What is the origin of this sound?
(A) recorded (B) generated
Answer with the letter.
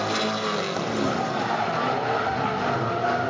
A